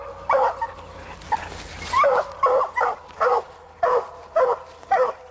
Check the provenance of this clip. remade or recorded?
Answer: recorded